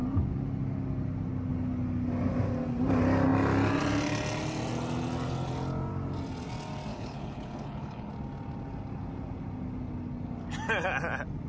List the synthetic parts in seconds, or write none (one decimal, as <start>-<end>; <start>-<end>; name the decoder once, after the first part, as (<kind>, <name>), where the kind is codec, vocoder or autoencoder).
6.9-8.1 (codec, HILCodec)